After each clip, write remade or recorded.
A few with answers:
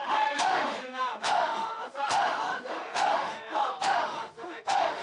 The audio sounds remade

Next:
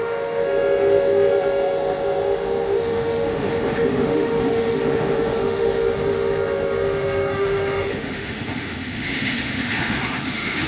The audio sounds remade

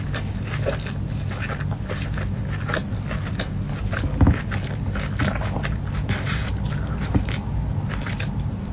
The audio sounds recorded